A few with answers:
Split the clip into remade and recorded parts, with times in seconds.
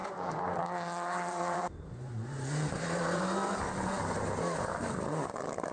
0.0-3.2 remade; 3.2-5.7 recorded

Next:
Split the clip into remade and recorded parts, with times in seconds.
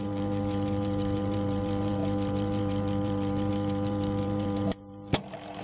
0.0-5.6 remade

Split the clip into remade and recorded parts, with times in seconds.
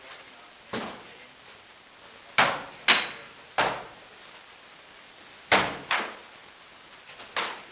0.0-7.7 recorded